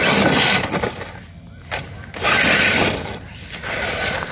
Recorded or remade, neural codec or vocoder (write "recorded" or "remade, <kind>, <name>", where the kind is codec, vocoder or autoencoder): recorded